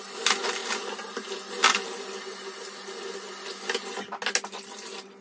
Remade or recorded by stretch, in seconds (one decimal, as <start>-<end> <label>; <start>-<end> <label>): 0.0-5.2 recorded